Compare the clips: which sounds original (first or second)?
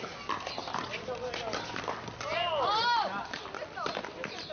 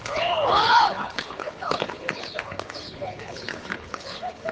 first